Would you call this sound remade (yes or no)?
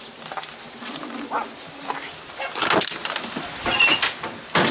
no